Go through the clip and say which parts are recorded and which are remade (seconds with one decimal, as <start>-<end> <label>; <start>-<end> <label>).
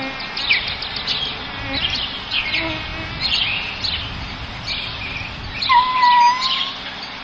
0.0-7.2 recorded